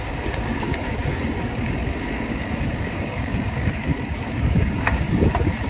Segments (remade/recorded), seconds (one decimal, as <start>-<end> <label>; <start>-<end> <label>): 0.0-5.7 remade